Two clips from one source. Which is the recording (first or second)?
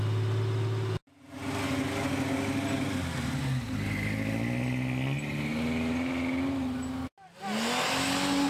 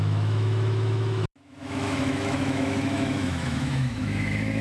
first